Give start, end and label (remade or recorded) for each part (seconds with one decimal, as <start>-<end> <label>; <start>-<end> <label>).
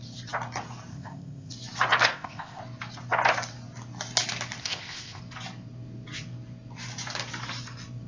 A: 0.0-0.9 recorded; 0.9-1.5 remade; 1.5-2.1 recorded; 2.1-2.6 remade; 2.6-4.6 recorded; 4.6-5.2 remade; 5.2-8.1 recorded